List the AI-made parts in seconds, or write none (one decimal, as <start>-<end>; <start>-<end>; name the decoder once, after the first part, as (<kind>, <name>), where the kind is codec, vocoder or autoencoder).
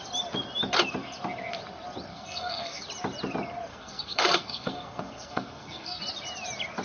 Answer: 2.1-2.8 (codec, SNAC); 3.7-6.0